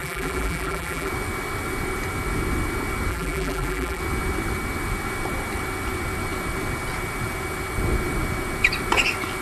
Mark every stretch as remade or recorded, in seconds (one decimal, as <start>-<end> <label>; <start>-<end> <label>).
0.0-1.1 remade; 1.1-3.1 recorded; 3.1-4.0 remade; 4.0-9.4 recorded